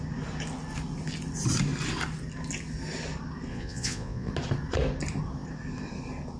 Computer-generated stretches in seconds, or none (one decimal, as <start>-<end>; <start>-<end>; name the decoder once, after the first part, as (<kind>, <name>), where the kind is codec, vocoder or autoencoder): 3.5-4.3 (vocoder, Vocos)